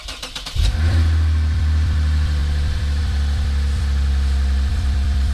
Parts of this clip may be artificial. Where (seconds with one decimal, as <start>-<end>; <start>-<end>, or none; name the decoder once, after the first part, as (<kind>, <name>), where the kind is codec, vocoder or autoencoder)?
0.0-5.3 (vocoder, BigVGAN v2)

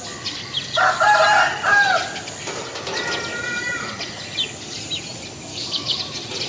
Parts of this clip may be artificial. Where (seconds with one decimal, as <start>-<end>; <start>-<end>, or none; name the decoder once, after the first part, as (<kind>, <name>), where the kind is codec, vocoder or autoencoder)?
5.5-6.0 (codec, DAC)

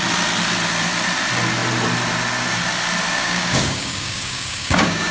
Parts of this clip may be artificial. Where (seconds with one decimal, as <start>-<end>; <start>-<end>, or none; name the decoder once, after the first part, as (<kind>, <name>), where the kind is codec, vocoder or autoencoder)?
3.2-5.1 (codec, DAC)

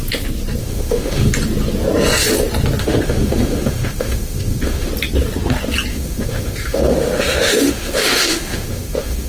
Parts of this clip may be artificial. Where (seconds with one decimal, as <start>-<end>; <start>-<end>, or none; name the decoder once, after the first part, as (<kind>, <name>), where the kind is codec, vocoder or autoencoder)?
0.6-1.3 (autoencoder, DAC-VAE); 2.8-4.9; 5.9-9.3

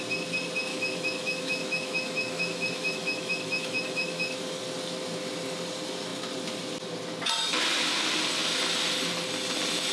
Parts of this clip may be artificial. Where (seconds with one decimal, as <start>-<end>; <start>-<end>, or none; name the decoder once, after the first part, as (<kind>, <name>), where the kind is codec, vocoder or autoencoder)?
0.7-4.6 (autoencoder, DAC-VAE)

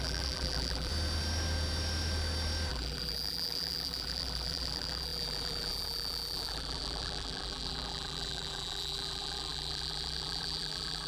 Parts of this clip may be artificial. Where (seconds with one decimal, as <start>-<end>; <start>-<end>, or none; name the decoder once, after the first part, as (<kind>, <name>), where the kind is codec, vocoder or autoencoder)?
0.0-0.9 (vocoder, BigVGAN v2); 2.7-11.1

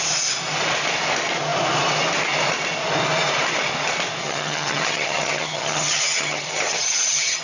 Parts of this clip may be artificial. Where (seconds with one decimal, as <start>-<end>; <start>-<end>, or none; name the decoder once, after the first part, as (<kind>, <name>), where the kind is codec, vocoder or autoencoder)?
4.2-7.4 (vocoder, HiFi-GAN)